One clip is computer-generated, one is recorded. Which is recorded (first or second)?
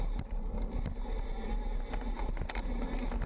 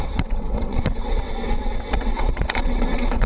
first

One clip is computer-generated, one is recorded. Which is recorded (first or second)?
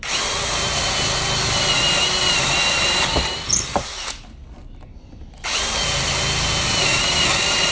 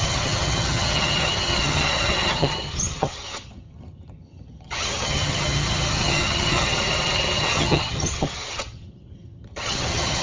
first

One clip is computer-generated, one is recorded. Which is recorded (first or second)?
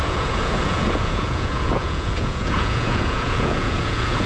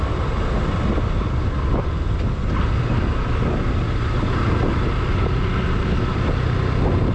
second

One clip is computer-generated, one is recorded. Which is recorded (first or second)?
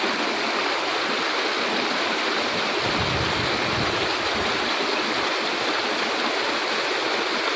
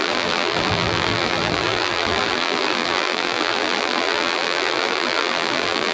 first